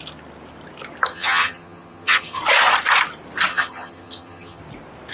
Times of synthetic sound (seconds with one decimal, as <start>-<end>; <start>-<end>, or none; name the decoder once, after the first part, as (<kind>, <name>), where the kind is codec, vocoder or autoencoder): 1.1-2.4 (vocoder, HiFi-GAN); 3.5-4.6